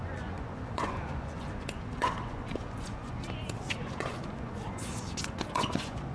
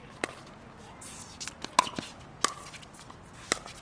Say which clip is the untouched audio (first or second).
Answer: second